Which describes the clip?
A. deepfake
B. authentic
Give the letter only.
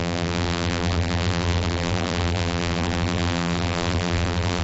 A